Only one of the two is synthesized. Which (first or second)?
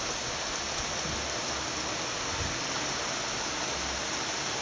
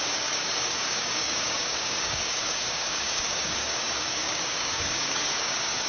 second